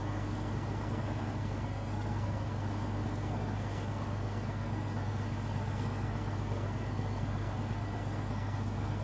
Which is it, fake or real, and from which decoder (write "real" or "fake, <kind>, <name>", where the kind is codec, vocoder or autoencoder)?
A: fake, codec, SNAC